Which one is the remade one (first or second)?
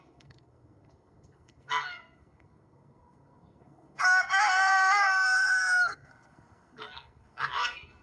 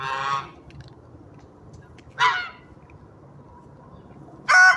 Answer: first